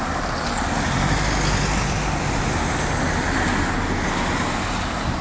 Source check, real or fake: real